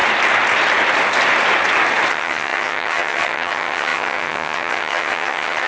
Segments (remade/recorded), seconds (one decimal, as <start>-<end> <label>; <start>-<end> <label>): 0.0-2.1 recorded; 2.1-5.7 remade